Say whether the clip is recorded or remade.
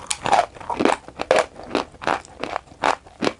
recorded